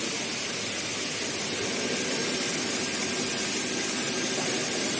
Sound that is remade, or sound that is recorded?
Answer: recorded